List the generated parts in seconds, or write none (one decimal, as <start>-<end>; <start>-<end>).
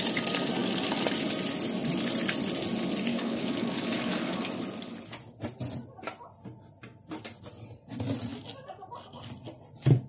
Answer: 3.1-4.4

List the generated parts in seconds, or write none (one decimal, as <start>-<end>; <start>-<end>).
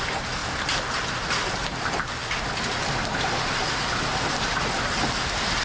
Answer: none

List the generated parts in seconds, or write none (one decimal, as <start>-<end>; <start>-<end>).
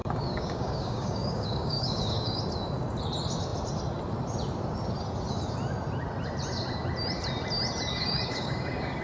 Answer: 0.0-2.4; 7.9-9.0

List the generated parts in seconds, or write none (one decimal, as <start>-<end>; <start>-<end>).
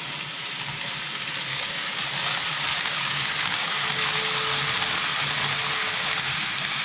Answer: 1.5-2.0; 2.7-4.0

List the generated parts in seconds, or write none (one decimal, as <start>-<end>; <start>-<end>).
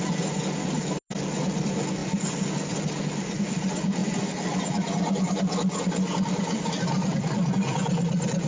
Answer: none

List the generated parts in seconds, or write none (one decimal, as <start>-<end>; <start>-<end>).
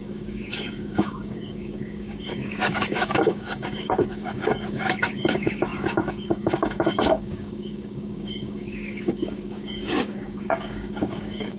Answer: 0.0-11.6